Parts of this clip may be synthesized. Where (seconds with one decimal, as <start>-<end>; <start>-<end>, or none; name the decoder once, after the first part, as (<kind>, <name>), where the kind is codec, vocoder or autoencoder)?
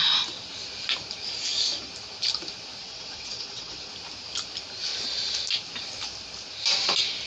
2.8-3.9 (vocoder, WaveNeXt)